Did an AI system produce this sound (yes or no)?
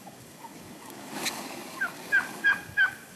yes